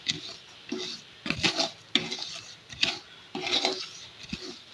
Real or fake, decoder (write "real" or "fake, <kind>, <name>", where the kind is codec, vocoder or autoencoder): real